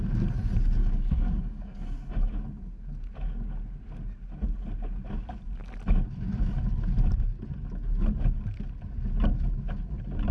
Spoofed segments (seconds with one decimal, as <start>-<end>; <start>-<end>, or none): 0.8-2.1